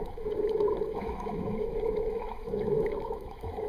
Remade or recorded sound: remade